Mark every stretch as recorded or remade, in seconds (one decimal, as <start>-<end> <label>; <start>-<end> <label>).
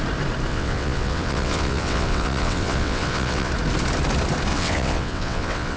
0.0-0.5 recorded; 0.5-3.5 remade; 3.5-4.5 recorded; 4.5-5.8 remade